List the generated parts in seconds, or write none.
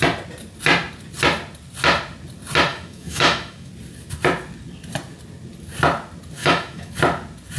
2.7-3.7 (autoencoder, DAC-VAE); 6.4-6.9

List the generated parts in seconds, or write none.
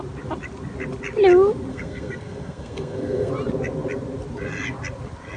1.7-3.3 (codec, SNAC)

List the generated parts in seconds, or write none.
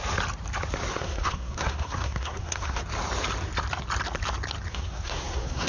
0.9-2.8 (codec, SNAC); 4.7-5.7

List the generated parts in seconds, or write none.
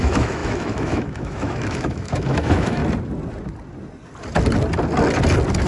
0.0-2.8 (autoencoder, DAC-VAE)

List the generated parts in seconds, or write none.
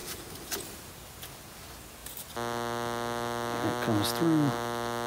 none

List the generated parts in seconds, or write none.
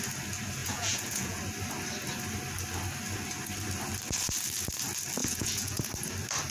0.6-1.4 (vocoder, Vocos); 5.2-5.9